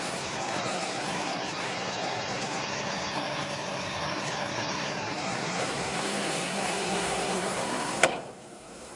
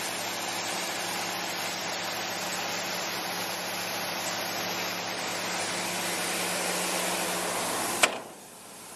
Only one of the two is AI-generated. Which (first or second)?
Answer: first